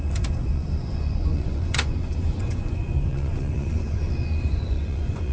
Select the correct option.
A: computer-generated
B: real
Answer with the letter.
A